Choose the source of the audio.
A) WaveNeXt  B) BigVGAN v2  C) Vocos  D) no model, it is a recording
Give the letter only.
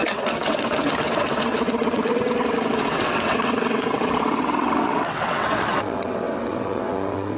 A